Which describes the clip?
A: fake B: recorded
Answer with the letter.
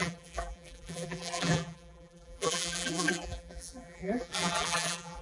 A